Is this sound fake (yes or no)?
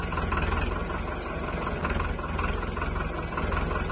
no